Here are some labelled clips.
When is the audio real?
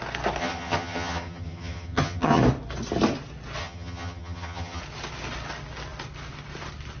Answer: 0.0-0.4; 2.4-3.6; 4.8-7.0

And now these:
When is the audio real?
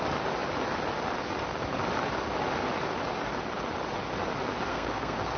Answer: 0.0-4.7